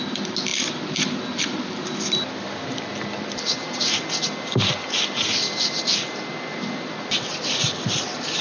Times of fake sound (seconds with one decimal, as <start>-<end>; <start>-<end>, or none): none